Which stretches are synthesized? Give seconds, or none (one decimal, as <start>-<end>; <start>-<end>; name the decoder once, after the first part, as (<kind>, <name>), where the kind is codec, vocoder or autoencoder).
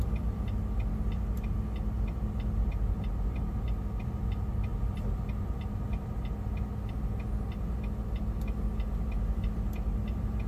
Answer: none